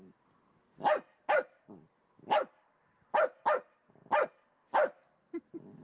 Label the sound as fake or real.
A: real